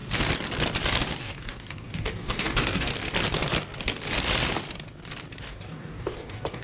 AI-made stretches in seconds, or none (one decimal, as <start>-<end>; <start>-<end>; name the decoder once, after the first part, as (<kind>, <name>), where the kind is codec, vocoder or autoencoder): 1.2-2.9 (codec, DAC); 5.4-6.6